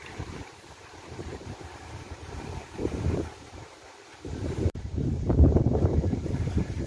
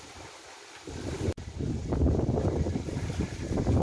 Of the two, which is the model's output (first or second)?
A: first